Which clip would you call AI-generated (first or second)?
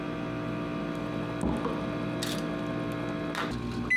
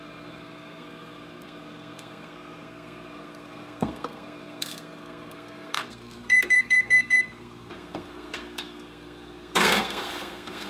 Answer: second